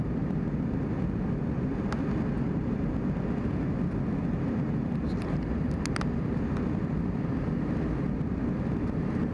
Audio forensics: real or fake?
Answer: real